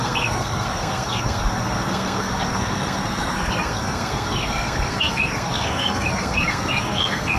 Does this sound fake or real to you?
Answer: fake